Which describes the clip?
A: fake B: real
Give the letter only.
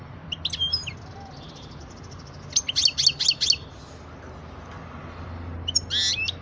B